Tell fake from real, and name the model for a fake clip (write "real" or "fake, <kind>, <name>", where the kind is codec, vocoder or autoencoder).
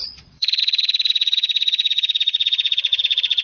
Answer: fake, vocoder, Vocos